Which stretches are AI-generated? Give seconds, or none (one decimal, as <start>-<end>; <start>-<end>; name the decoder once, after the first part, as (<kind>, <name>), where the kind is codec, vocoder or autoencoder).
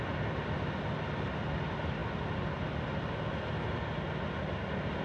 none